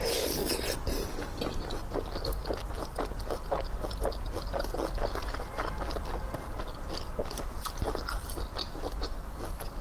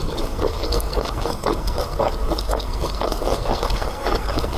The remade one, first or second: second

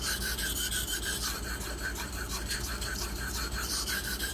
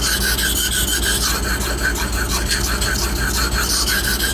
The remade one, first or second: first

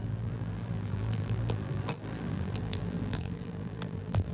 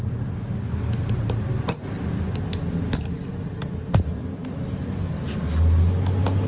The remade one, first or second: first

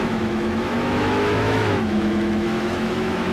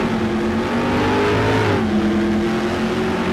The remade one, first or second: first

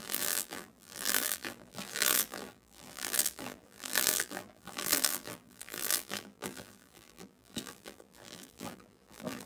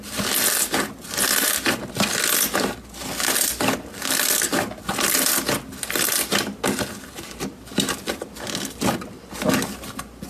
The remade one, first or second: first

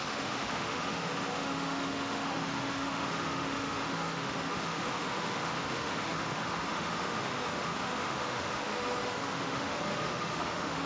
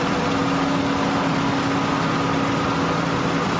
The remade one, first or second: first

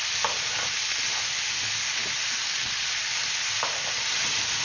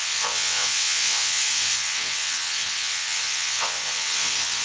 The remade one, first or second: second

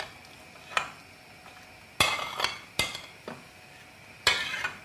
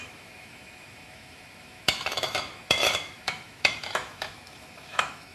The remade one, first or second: second